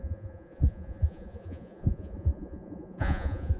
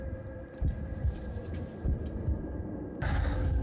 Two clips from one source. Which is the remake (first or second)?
first